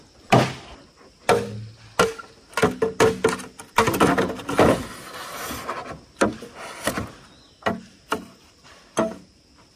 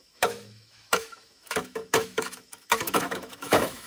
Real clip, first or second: first